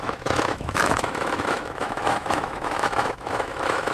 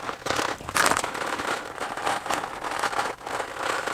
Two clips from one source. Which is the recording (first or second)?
second